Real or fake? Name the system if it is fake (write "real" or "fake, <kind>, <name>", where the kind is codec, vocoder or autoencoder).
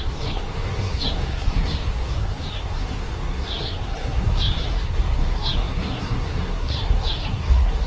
fake, codec, SNAC